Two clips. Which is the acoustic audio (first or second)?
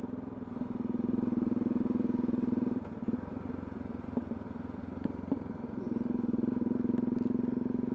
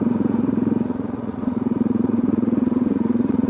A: first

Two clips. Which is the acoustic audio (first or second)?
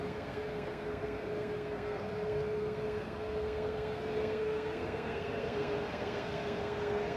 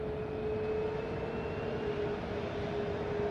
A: second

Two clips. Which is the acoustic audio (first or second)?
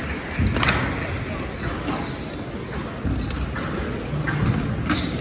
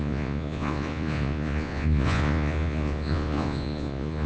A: first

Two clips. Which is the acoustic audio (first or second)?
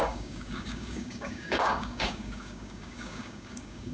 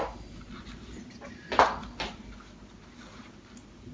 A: second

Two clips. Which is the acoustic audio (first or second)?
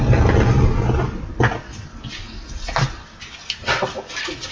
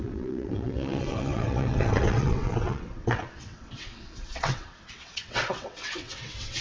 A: first